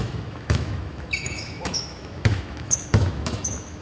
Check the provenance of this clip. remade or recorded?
remade